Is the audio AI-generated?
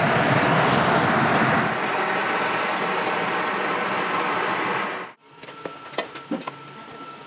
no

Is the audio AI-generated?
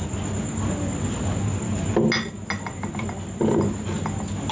no